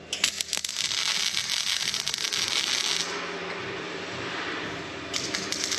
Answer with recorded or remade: recorded